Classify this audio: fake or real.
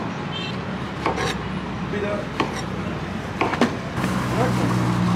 real